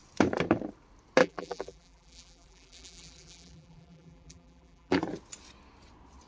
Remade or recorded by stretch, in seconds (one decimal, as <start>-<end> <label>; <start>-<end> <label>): 0.0-1.2 recorded; 1.2-5.0 remade; 5.0-6.3 recorded